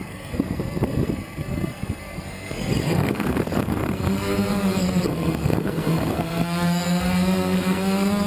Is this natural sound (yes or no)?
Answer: no